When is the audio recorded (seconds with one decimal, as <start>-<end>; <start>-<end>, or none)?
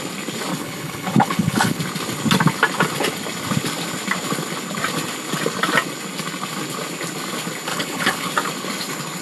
0.0-0.5; 1.8-7.7; 8.3-9.2